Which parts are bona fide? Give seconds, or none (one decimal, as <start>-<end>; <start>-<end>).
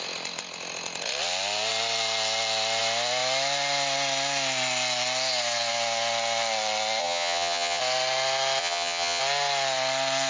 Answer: 0.0-7.0; 7.8-8.6; 9.2-10.3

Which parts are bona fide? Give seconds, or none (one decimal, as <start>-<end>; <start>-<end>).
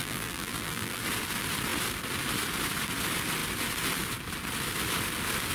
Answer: 1.0-5.5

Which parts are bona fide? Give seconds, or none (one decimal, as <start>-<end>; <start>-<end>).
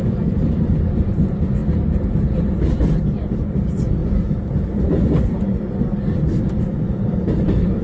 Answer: 1.6-2.4